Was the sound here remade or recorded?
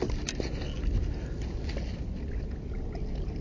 recorded